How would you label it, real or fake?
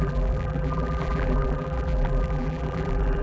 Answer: fake